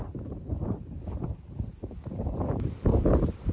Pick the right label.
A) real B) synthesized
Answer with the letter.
B